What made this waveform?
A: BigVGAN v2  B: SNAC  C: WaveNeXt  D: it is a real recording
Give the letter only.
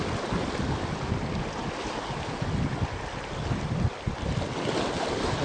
D